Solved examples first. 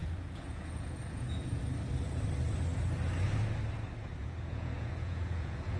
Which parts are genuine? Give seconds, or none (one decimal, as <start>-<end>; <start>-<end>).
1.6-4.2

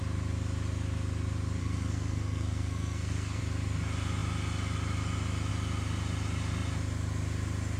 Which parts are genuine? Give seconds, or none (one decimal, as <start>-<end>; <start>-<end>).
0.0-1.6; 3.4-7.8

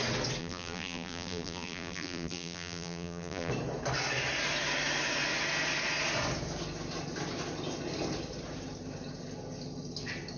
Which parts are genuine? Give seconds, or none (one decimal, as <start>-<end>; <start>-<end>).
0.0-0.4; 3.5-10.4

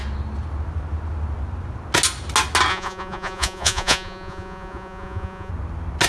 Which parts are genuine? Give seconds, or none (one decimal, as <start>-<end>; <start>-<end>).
0.0-2.7; 5.5-6.1

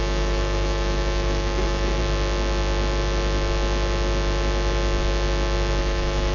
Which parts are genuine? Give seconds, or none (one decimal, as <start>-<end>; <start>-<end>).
2.0-5.8

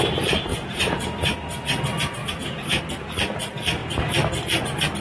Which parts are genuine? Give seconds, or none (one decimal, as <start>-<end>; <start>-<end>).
0.0-0.5; 1.0-2.2; 2.8-5.0